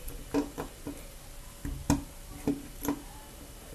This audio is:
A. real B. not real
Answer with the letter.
A